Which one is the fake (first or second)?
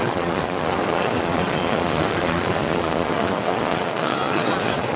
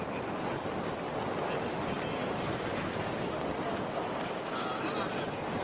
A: first